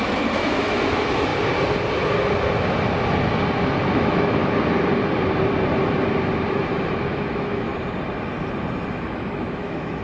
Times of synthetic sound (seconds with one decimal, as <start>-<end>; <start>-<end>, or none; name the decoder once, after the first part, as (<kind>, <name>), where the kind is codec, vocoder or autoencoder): 0.0-1.3 (autoencoder, DAC-VAE); 3.9-4.4; 6.5-7.7; 8.9-10.0